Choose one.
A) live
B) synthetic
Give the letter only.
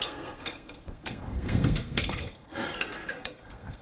B